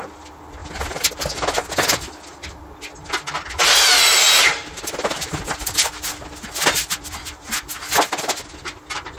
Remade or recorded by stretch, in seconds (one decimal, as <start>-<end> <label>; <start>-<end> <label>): 0.0-9.2 recorded